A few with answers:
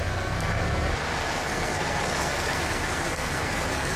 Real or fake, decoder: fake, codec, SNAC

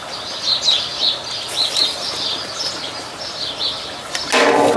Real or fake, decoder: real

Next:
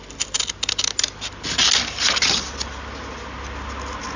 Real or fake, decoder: real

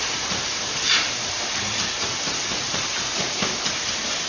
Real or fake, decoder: fake, vocoder, BigVGAN v2